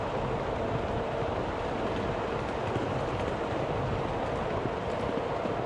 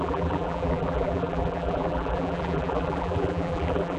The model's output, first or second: second